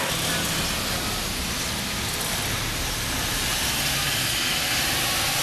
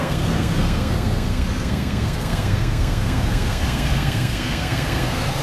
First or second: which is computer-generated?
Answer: second